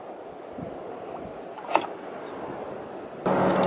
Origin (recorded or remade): recorded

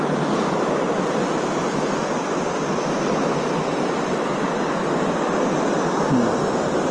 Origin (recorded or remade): recorded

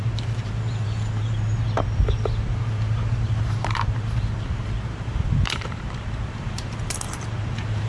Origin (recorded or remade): remade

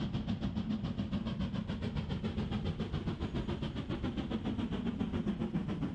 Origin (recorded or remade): recorded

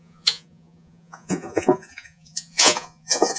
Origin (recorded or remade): remade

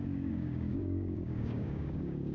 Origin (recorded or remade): remade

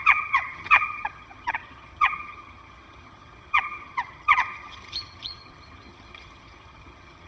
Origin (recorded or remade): remade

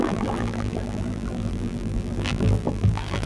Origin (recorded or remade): remade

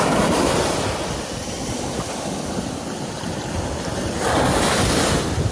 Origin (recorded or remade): recorded